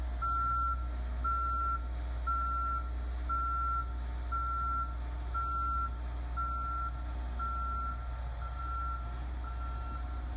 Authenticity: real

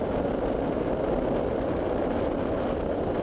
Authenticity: real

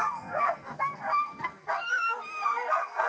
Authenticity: fake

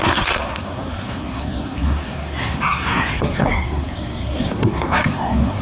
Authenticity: fake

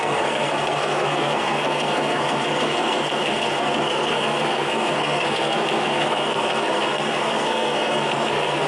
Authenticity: fake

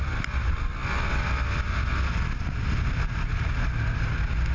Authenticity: real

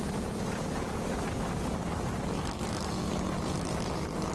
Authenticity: real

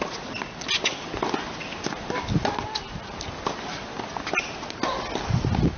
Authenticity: real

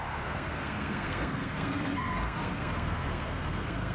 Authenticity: fake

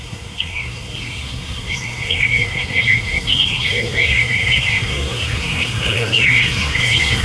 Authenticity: fake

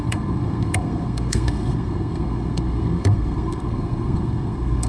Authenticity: fake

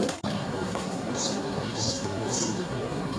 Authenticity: fake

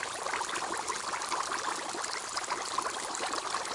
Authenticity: real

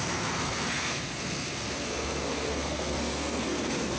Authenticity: fake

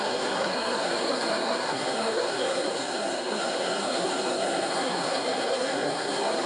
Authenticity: fake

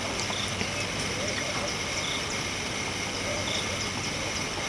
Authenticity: real